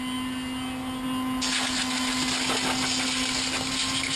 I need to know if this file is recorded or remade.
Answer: recorded